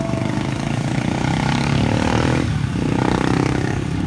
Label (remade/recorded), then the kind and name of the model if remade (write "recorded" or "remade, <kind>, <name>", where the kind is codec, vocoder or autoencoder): remade, codec, DAC